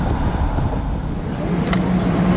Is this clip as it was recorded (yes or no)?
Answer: yes